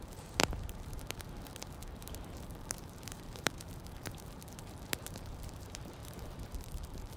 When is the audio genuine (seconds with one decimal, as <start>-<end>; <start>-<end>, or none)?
none